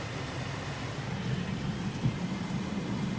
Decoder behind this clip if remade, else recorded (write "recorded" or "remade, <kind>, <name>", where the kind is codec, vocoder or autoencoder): recorded